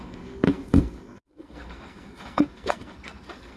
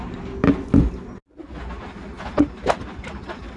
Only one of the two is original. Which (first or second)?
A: second